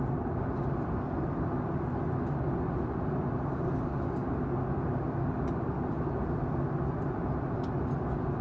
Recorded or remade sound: recorded